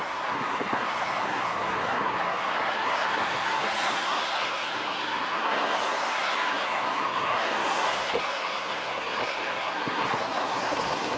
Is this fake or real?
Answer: fake